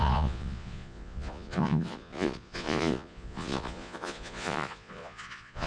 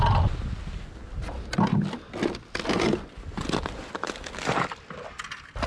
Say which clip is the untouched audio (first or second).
second